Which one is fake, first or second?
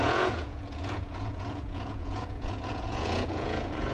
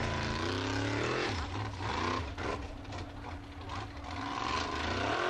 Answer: first